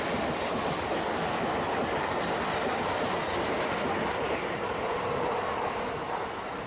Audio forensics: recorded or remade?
recorded